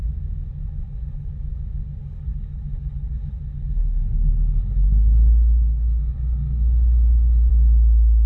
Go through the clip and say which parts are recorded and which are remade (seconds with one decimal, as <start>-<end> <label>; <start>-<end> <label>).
0.0-0.6 recorded; 0.6-1.3 remade; 1.3-2.0 recorded; 2.0-3.4 remade; 3.4-3.8 recorded; 3.8-7.5 remade; 7.5-8.3 recorded